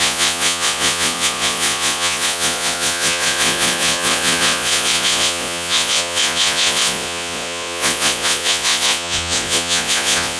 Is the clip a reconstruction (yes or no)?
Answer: yes